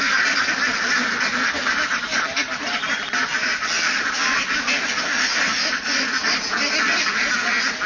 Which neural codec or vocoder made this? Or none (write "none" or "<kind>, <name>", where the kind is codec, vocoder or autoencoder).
none